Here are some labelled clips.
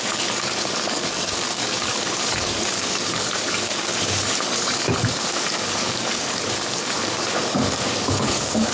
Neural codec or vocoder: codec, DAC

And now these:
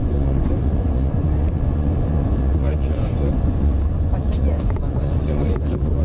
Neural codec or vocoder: vocoder, Vocos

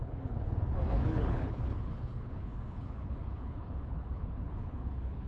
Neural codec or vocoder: codec, HILCodec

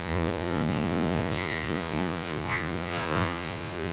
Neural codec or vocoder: vocoder, Vocos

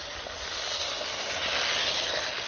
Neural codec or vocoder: none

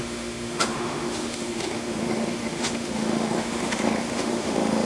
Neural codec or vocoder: autoencoder, DAC-VAE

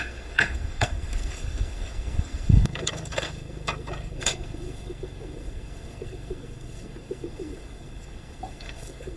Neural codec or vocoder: codec, SNAC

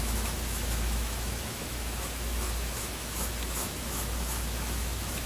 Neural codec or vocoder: autoencoder, DAC-VAE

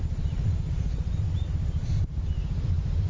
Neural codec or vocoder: none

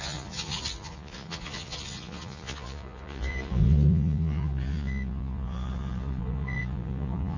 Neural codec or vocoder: vocoder, Vocos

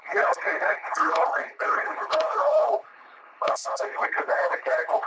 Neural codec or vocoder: codec, HILCodec